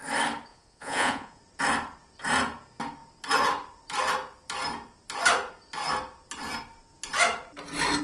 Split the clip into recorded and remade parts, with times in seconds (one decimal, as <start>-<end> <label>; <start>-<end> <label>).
0.0-0.5 recorded; 0.5-1.4 remade; 1.4-8.0 recorded